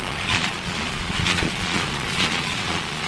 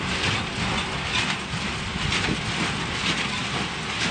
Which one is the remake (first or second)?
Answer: first